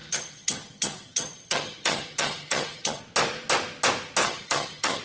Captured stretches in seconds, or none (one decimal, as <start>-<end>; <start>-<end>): 3.0-4.2